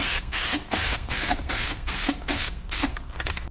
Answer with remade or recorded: remade